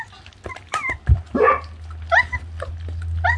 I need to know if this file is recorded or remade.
recorded